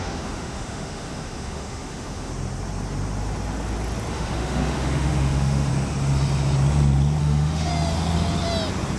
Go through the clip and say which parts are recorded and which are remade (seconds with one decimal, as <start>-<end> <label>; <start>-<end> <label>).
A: 0.0-2.3 remade; 2.3-4.1 recorded; 4.1-5.7 remade; 5.7-7.2 recorded; 7.2-7.7 remade; 7.7-9.0 recorded